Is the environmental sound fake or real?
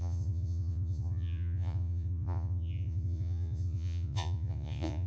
fake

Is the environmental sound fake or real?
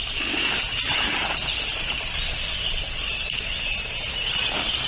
real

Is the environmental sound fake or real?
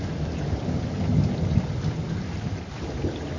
real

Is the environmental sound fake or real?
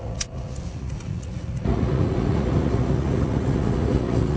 fake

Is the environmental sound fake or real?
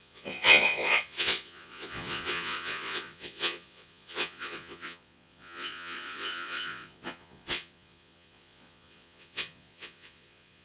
fake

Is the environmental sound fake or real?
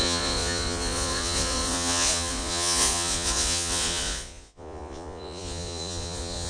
fake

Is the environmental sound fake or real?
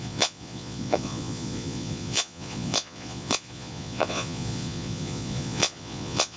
fake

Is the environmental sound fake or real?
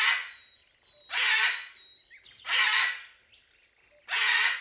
real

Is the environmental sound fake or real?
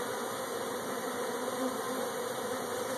real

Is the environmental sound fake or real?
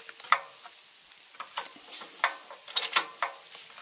real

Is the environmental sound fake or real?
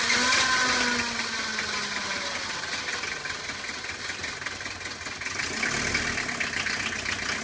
real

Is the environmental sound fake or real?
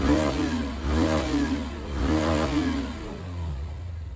fake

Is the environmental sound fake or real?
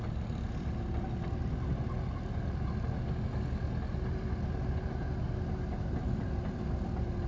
real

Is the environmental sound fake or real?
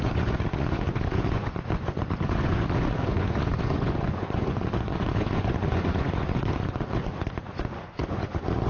fake